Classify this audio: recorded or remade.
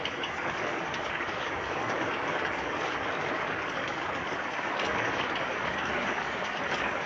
remade